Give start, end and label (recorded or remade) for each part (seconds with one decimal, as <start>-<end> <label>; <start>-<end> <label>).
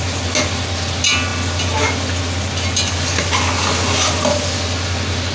0.0-5.3 recorded